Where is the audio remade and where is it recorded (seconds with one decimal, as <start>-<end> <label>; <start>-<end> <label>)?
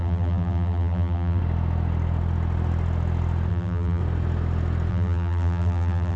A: 0.0-1.4 remade; 1.4-3.5 recorded; 3.5-4.0 remade; 4.0-4.9 recorded; 4.9-6.2 remade